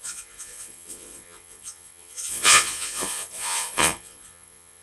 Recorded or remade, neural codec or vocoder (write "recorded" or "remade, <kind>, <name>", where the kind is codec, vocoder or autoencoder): remade, vocoder, Vocos